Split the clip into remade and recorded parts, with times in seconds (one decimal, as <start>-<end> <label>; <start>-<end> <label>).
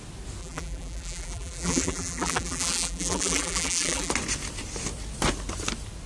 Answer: 0.0-0.4 recorded; 0.4-4.1 remade; 4.1-6.1 recorded